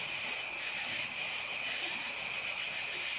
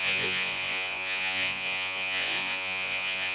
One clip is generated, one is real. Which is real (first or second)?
first